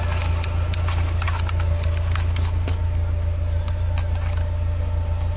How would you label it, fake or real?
real